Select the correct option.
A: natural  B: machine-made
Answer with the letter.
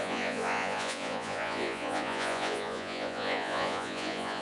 B